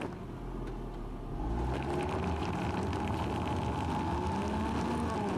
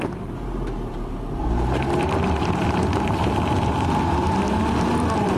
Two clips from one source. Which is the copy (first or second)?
second